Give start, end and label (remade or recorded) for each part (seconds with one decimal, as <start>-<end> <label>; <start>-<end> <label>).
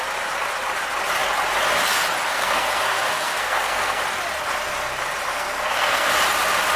0.0-2.3 recorded; 2.3-4.0 remade; 4.0-5.3 recorded; 5.3-6.1 remade; 6.1-6.8 recorded